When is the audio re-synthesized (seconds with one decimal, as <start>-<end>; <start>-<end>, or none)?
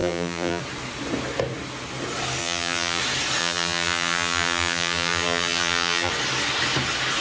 0.0-0.6; 2.4-3.0; 3.4-6.1